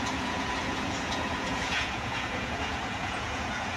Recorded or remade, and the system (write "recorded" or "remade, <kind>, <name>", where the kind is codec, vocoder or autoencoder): remade, vocoder, Vocos